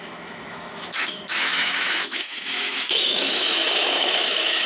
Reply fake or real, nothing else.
fake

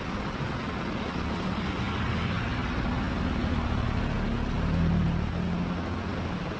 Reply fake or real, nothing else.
real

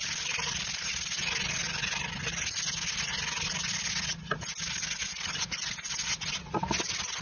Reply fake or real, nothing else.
real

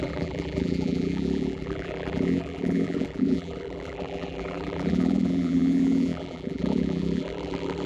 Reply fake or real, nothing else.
fake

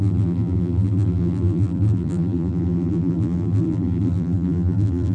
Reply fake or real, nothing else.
fake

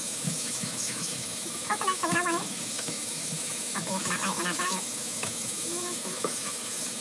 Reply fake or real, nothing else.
fake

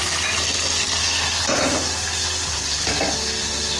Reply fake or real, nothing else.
real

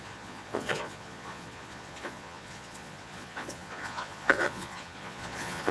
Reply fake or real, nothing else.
fake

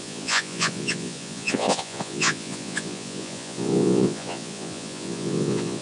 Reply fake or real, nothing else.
fake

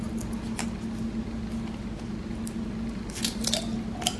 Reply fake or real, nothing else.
real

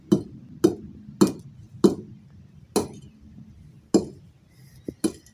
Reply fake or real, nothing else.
real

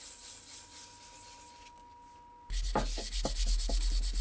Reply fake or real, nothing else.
real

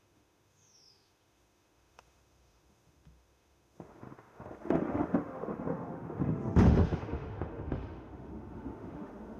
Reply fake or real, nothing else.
fake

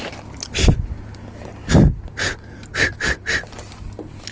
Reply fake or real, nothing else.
real